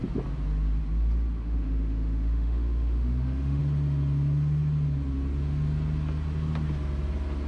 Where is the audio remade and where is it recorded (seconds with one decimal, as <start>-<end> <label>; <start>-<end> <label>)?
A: 0.0-1.4 recorded; 1.4-3.6 remade; 3.6-7.5 recorded